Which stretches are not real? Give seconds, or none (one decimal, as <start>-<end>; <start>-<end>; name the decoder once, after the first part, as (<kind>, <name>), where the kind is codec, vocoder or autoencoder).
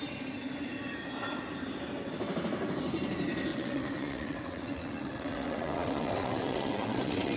3.5-7.4 (vocoder, WaveNeXt)